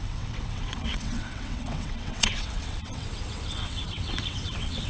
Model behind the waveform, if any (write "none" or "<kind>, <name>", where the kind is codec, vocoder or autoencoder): vocoder, WaveNeXt